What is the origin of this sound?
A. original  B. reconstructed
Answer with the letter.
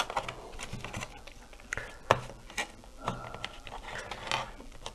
A